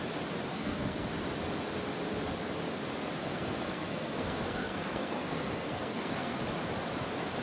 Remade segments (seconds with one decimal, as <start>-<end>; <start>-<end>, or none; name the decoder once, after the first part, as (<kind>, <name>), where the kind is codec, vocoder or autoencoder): 0.5-1.1 (codec, SNAC); 3.2-6.4